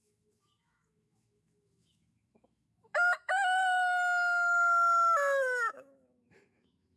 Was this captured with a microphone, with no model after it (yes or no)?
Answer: no